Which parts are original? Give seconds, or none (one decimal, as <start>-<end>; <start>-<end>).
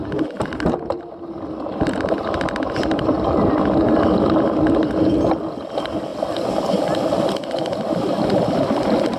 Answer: 0.0-6.1; 6.8-9.2